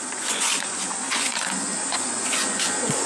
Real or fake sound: fake